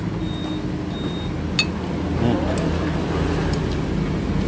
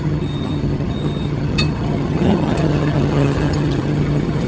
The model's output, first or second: second